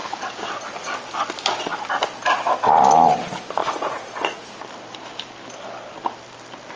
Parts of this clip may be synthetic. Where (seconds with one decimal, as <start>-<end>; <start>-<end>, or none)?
3.6-4.5